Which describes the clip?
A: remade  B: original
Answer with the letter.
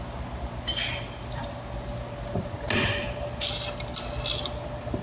B